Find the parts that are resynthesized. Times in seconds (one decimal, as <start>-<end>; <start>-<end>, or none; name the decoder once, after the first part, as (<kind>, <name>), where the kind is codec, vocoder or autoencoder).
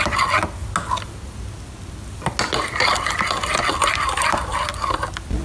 none